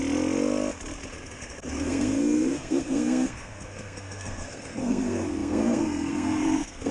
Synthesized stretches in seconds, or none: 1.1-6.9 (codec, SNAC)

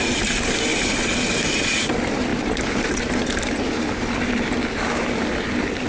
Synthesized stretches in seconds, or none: none

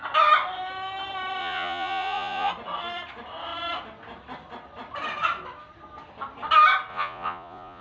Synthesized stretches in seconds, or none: 1.4-2.5 (vocoder, Vocos); 6.9-7.8

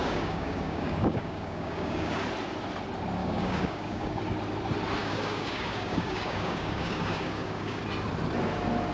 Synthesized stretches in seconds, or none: 0.0-2.2 (codec, DAC); 3.2-4.2; 5.0-7.8

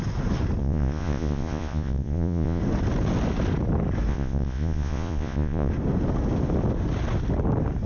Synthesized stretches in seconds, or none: 0.6-2.6 (vocoder, Vocos); 4.1-5.7

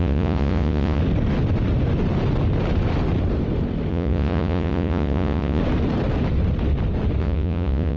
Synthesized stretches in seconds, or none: 0.0-1.0 (vocoder, Vocos); 3.9-5.6; 7.2-8.0